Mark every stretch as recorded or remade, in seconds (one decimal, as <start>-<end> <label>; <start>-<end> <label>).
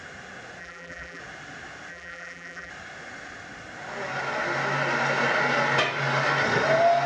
0.0-0.6 recorded; 0.6-1.2 remade; 1.2-1.9 recorded; 1.9-2.7 remade; 2.7-7.1 recorded